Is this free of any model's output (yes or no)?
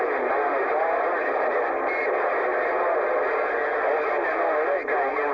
yes